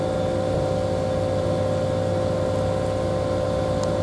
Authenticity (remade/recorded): recorded